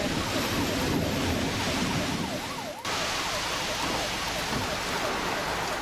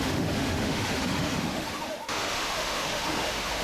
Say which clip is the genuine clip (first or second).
first